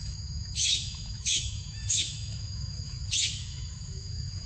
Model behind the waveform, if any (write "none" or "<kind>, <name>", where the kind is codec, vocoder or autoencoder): autoencoder, DAC-VAE